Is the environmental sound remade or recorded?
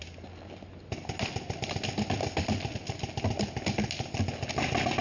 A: recorded